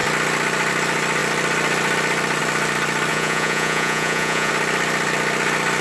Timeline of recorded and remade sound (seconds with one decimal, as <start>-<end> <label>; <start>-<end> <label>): 0.0-3.1 recorded; 3.1-4.5 remade; 4.5-5.8 recorded